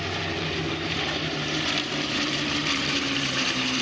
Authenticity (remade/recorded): remade